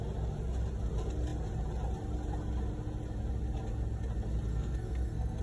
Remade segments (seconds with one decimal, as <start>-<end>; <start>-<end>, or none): 4.5-5.4